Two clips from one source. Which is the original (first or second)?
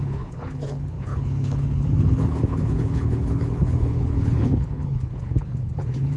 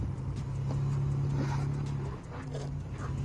second